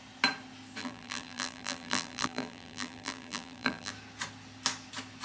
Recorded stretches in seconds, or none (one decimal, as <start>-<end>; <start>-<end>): 0.0-0.8; 3.9-5.2